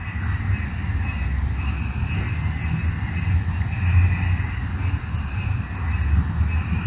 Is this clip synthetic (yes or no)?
no